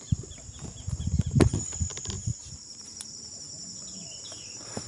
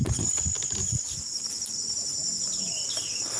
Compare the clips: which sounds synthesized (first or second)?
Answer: first